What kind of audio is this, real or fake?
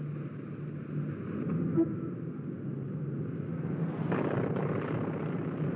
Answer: real